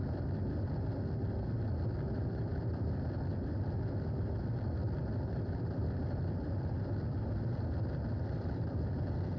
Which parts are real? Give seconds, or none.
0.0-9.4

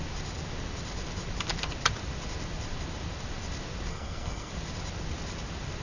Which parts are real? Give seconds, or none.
0.0-3.9; 4.5-5.8

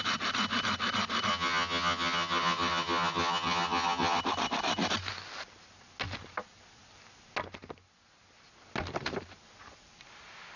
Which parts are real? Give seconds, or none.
0.0-1.3; 4.2-10.6

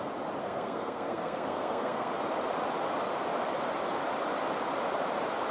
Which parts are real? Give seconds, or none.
0.0-0.4; 2.1-5.5

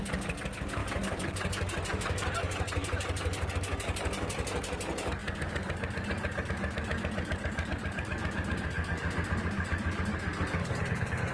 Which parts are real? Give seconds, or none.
none

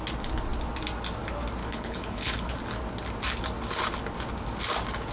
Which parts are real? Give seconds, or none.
0.0-1.6; 2.5-5.1

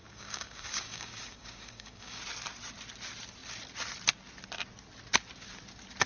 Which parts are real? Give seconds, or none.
2.2-6.1